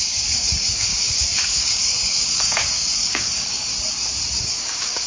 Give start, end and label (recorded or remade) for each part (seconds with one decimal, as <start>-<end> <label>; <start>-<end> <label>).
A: 0.0-3.7 remade; 3.7-4.4 recorded; 4.4-5.1 remade